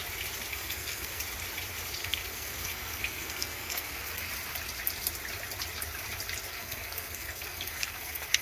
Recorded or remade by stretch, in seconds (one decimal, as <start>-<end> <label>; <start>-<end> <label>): 0.0-0.5 recorded; 0.5-1.2 remade; 1.2-2.0 recorded; 2.0-4.3 remade; 4.3-6.5 recorded; 6.5-8.4 remade